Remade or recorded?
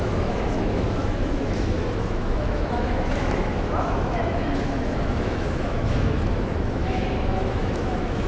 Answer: remade